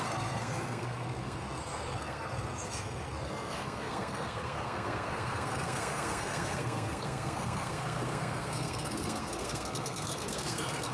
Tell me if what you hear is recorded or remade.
remade